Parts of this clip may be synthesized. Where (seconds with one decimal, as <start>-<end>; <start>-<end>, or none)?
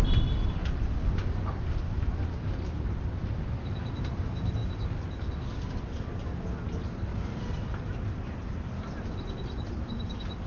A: 3.2-4.0; 7.1-8.8